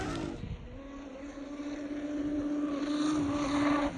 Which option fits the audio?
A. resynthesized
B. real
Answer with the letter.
B